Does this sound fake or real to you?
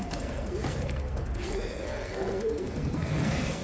fake